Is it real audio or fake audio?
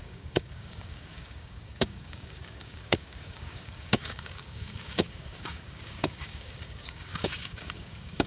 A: fake